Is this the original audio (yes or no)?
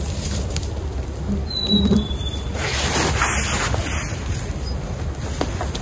no